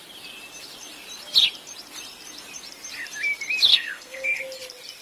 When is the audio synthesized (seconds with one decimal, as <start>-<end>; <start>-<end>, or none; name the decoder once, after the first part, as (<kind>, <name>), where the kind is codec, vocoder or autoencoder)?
3.7-4.4 (codec, SNAC)

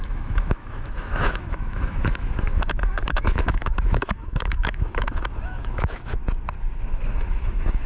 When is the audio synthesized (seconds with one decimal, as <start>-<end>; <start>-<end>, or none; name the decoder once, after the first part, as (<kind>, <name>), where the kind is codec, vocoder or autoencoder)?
0.0-6.2 (autoencoder, DAC-VAE); 6.9-7.9

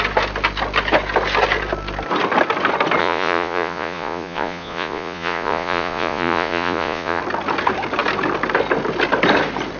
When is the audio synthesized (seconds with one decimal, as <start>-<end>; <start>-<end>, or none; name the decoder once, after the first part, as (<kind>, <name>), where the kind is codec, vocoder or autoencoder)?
3.0-7.2 (vocoder, Vocos)